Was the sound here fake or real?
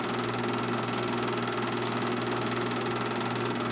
real